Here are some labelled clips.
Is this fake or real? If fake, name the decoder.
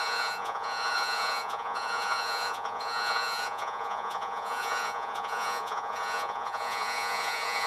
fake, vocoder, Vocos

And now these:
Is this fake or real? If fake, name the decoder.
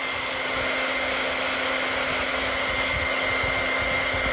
real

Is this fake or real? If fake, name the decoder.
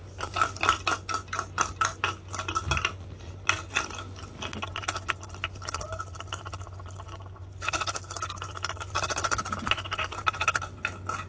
real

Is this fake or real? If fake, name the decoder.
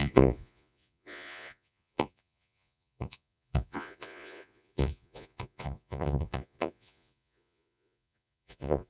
fake, vocoder, Vocos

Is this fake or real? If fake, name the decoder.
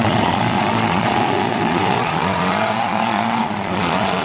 fake, vocoder, Vocos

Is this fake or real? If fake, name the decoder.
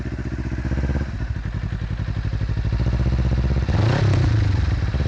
real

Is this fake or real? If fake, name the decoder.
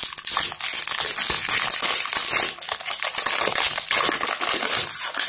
real